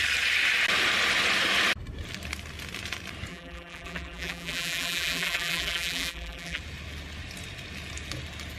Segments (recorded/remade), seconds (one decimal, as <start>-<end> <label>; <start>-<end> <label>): 0.0-3.3 recorded; 3.3-6.6 remade; 6.6-8.6 recorded

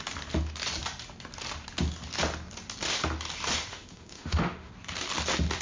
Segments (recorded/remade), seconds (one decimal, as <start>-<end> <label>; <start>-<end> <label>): 0.0-3.7 recorded; 3.7-4.7 remade; 4.7-5.6 recorded

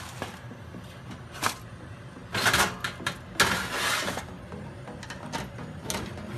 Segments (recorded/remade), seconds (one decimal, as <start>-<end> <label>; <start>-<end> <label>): 0.0-6.4 recorded

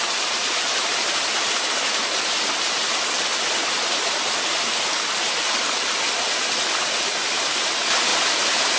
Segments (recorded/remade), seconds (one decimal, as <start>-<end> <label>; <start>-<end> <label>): 0.0-8.8 recorded

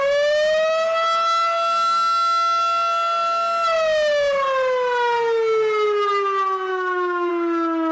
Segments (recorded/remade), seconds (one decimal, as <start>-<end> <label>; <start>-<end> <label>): 0.0-6.7 recorded; 6.7-7.3 remade; 7.3-7.9 recorded